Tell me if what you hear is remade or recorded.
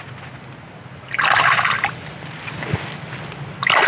recorded